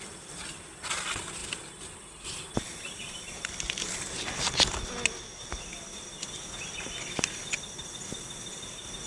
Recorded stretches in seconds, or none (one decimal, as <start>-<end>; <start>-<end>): 0.0-1.4; 3.9-9.1